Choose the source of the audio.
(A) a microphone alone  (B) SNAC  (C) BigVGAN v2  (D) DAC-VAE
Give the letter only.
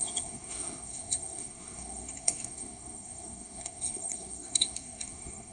B